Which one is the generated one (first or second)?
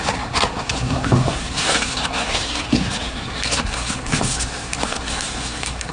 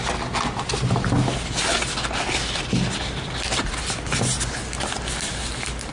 first